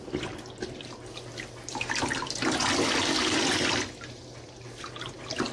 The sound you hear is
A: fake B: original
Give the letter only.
B